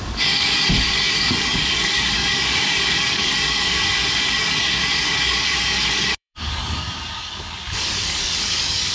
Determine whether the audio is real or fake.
fake